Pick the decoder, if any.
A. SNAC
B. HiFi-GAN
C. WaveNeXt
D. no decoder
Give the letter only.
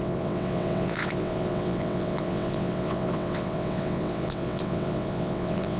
C